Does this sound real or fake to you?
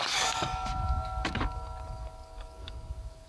fake